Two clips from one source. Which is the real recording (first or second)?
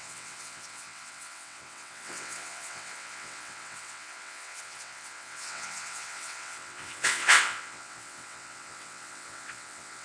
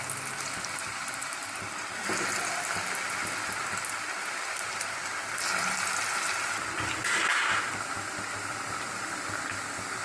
second